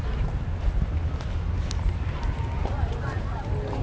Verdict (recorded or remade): recorded